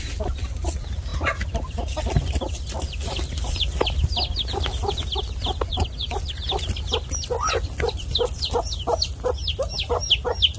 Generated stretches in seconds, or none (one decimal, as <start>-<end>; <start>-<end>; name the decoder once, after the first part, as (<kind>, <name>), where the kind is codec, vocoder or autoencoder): none

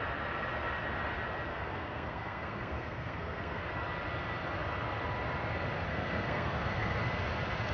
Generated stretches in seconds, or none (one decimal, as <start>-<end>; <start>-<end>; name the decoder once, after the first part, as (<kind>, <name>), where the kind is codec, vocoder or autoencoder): 1.5-3.7 (codec, SNAC); 5.9-7.0

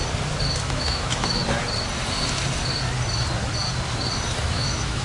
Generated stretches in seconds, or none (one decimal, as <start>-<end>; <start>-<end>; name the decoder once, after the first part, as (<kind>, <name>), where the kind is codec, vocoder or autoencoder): 0.6-1.4 (autoencoder, DAC-VAE); 4.4-5.0

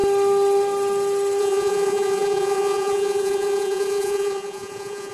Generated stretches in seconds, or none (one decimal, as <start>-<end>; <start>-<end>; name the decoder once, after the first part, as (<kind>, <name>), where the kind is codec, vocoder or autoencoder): 1.4-5.1 (vocoder, Vocos)

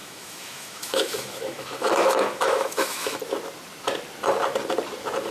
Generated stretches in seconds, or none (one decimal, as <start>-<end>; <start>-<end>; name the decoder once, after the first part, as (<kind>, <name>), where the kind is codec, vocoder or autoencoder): 0.0-3.2 (autoencoder, DAC-VAE)

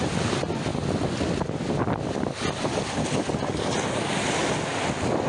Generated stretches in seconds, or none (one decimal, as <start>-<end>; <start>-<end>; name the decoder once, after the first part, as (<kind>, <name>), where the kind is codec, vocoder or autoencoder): none

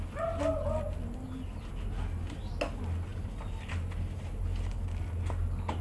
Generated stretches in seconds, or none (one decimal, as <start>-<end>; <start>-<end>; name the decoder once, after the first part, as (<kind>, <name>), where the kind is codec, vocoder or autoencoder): none

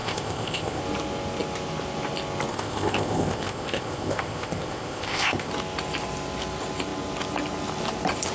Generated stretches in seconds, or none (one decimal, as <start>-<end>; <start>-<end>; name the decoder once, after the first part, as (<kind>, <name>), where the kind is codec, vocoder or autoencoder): 0.0-0.8 (codec, ZipCodec); 2.5-5.5